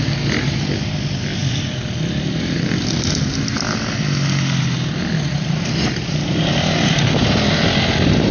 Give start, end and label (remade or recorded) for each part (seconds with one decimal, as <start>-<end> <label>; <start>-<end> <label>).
0.0-8.3 recorded